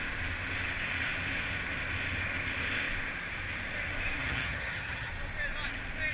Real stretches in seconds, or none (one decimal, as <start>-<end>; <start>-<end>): 0.0-4.2; 5.1-6.1